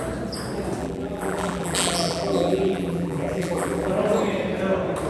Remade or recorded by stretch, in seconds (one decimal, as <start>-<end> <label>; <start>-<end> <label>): 0.0-0.8 recorded; 0.8-3.9 remade; 3.9-5.1 recorded